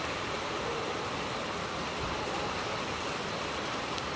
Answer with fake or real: real